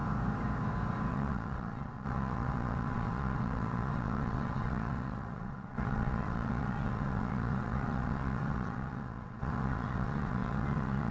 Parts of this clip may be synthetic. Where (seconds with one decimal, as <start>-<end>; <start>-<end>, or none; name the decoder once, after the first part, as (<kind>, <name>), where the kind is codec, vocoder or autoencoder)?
1.1-11.1 (vocoder, WaveNeXt)